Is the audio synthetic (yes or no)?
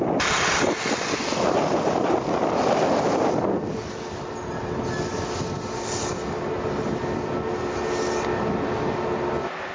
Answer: no